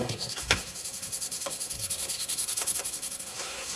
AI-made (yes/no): yes